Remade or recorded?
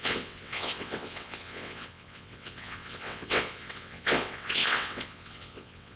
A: remade